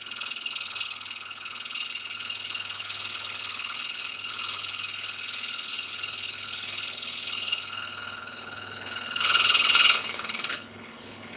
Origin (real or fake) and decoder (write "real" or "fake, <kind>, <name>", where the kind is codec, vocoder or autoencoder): fake, codec, HILCodec